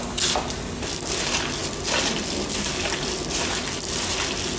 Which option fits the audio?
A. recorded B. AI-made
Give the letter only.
A